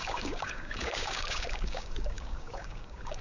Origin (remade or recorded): remade